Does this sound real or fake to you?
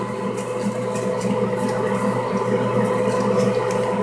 real